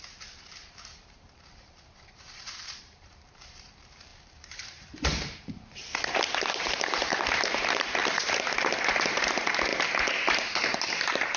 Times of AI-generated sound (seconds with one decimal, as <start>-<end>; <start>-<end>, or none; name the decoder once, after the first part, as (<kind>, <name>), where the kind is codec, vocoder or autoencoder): 0.0-9.7 (vocoder, BigVGAN v2); 10.3-11.4